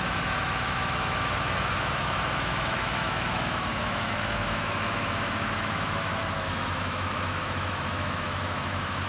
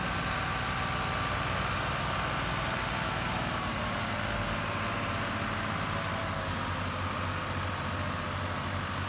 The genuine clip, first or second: second